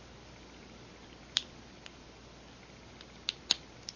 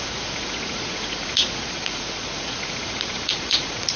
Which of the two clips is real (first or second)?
first